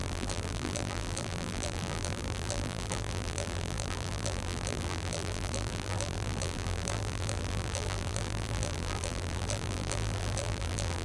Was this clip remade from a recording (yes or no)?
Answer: yes